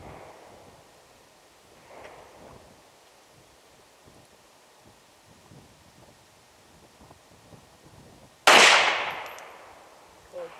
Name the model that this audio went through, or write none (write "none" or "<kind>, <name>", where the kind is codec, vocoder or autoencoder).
none